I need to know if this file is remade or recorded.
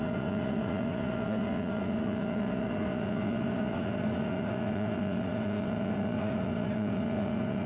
remade